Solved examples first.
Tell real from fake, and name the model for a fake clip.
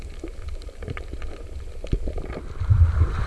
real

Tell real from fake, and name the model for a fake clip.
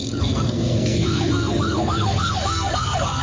fake, codec, SNAC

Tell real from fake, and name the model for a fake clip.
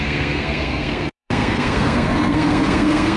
fake, codec, SNAC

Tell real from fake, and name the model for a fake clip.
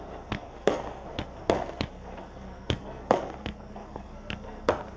fake, codec, SNAC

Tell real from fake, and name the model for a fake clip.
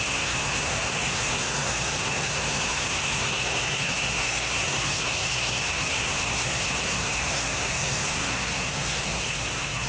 fake, codec, SNAC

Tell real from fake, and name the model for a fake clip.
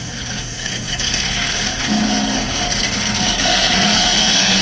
fake, codec, SNAC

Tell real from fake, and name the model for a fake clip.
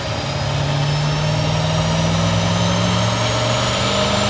real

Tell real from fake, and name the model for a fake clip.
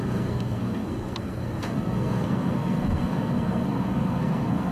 fake, codec, SNAC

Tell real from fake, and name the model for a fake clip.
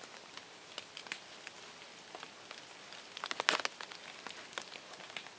real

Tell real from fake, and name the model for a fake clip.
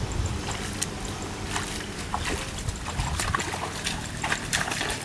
real